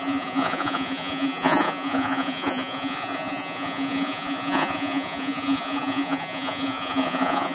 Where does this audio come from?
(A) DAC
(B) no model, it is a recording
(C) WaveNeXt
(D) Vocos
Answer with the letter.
D